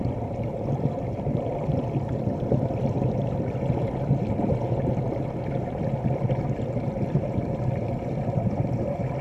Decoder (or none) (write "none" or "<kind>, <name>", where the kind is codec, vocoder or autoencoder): vocoder, BigVGAN v2